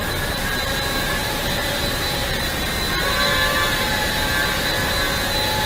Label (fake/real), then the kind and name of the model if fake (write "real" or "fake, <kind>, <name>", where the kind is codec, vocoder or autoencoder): real